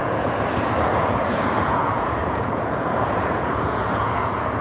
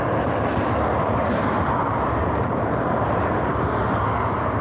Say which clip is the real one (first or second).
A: second